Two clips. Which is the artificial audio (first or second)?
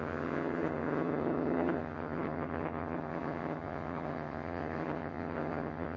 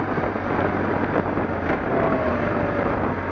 first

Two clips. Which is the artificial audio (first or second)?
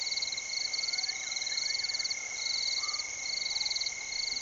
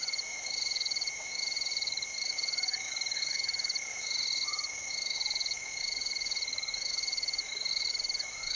second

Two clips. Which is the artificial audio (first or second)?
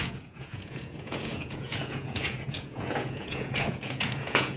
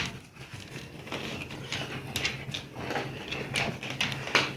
first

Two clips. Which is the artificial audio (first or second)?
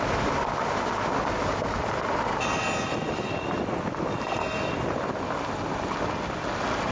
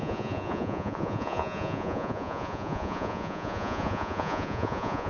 second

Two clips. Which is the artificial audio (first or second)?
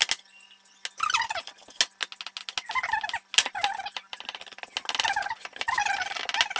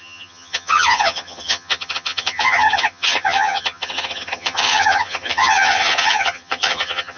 second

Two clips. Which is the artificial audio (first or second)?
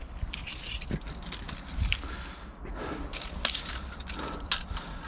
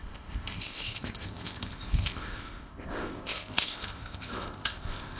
second